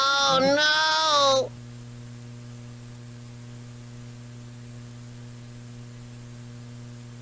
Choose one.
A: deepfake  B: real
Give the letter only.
B